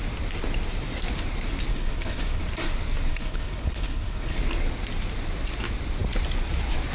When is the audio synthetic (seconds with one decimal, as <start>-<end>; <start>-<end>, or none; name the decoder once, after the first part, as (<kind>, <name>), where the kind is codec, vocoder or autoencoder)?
1.7-2.4 (codec, HILCodec); 3.1-4.4